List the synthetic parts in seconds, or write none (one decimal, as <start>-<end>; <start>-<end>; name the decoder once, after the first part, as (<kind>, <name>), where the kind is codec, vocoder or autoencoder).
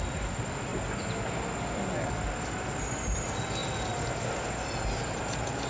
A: none